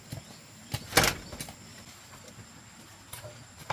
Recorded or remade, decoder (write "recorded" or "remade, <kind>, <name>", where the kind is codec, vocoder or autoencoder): recorded